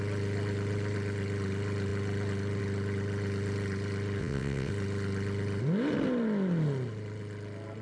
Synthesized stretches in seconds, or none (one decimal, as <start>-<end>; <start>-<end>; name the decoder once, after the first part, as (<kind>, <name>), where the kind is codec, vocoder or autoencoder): 4.2-4.7 (vocoder, WaveNeXt)